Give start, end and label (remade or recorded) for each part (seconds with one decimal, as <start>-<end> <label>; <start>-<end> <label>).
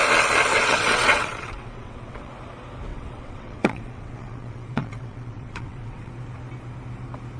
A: 0.0-0.5 recorded; 0.5-2.3 remade; 2.3-2.9 recorded; 2.9-6.1 remade; 6.1-7.4 recorded